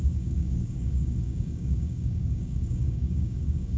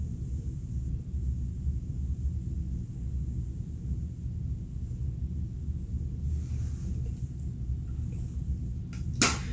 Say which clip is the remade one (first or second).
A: first